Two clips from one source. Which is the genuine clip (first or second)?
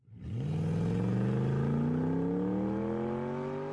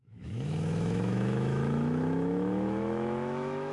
first